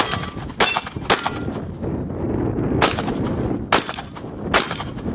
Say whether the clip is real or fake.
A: real